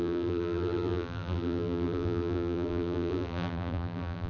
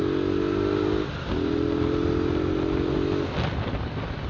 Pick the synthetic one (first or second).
first